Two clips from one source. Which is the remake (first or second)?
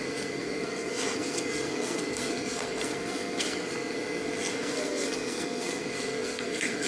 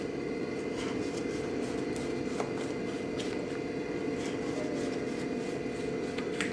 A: first